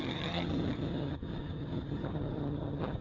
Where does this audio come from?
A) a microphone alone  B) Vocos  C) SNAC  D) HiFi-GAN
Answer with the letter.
D